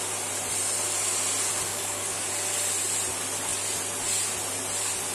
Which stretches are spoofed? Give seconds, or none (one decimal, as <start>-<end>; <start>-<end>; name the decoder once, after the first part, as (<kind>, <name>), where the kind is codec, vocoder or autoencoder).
1.7-2.3 (codec, DAC)